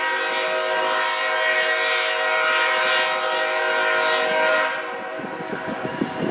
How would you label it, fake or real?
real